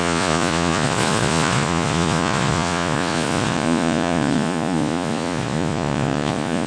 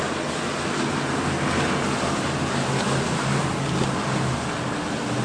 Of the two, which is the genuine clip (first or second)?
second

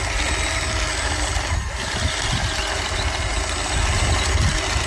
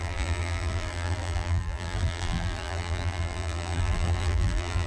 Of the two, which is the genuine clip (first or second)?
first